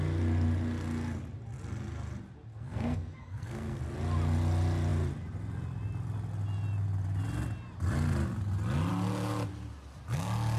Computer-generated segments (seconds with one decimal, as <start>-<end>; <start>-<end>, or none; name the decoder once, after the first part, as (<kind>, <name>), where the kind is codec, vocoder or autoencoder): 2.5-3.8 (codec, SNAC)